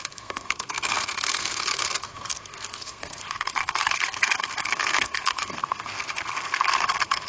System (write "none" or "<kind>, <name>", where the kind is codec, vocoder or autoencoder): codec, SNAC